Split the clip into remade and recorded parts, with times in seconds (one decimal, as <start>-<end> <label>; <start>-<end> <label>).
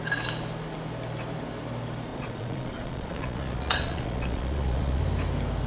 0.0-2.1 recorded; 2.1-5.0 remade; 5.0-5.7 recorded